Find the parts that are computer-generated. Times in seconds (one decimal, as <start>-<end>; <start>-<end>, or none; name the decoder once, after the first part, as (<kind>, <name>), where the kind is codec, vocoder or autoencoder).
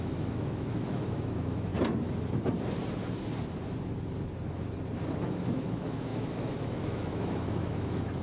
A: 0.0-1.7 (autoencoder, DAC-VAE); 5.2-8.2